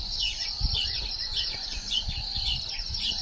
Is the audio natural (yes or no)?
no